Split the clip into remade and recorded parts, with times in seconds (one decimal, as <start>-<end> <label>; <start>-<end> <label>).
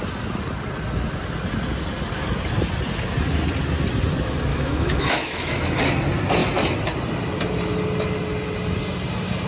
0.0-4.5 recorded; 4.5-5.8 remade; 5.8-9.5 recorded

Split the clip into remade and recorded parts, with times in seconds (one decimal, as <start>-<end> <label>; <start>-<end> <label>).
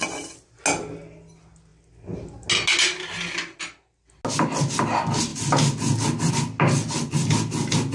0.0-7.9 recorded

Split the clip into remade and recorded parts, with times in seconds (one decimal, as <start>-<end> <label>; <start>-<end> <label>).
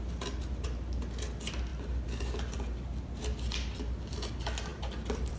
0.0-4.7 recorded; 4.7-5.4 remade